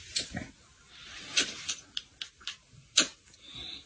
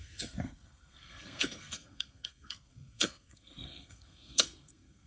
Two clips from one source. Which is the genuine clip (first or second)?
first